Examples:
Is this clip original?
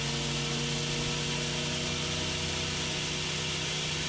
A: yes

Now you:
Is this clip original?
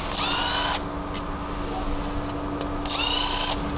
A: yes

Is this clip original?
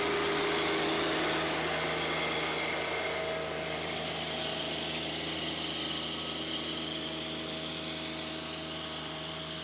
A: yes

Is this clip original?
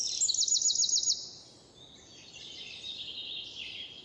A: yes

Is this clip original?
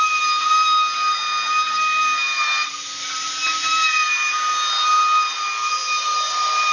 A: yes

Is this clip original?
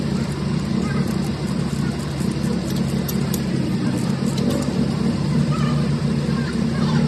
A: yes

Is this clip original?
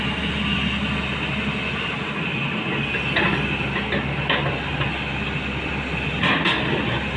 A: yes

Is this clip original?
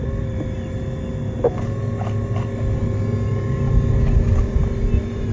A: yes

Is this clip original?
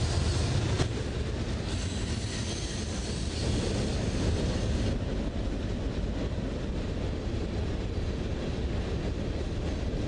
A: yes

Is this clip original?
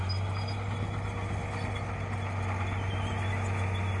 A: yes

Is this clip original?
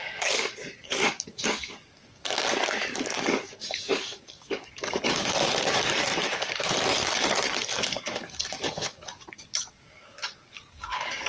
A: no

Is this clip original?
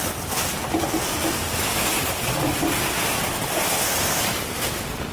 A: yes